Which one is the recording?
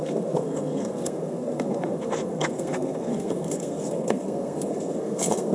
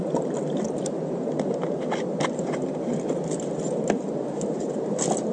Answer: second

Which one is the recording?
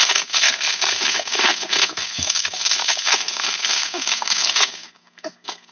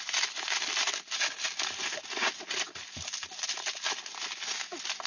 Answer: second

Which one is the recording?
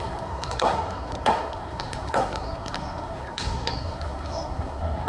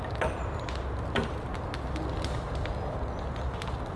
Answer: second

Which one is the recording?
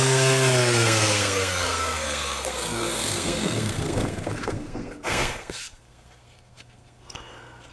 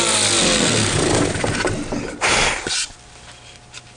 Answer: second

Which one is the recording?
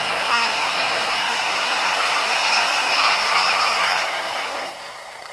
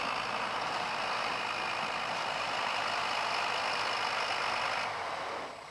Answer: second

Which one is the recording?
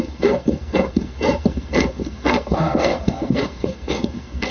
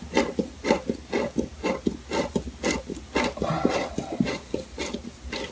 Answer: second